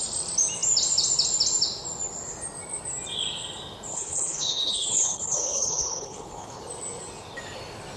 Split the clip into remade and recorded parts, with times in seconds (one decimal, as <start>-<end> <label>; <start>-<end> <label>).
0.0-3.9 recorded; 3.9-6.6 remade; 6.6-8.0 recorded